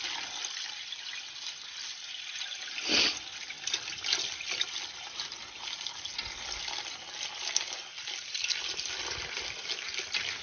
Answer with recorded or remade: recorded